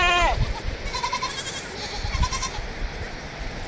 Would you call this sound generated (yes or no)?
no